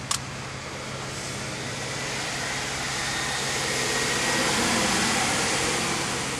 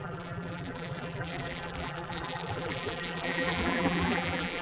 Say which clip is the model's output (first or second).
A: second